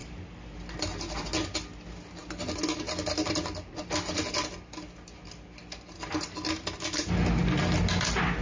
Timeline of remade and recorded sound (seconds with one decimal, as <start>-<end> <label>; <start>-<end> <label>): 0.0-8.4 recorded